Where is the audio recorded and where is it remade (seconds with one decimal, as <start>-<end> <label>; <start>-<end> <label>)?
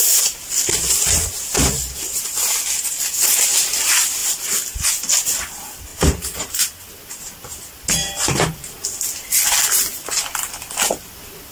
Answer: 0.0-5.9 recorded; 5.9-6.5 remade; 6.5-11.5 recorded